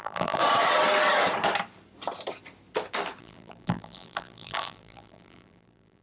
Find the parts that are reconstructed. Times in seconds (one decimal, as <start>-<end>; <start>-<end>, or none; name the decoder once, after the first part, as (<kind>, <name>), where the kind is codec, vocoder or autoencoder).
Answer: 0.0-0.4 (vocoder, BigVGAN v2); 3.2-6.0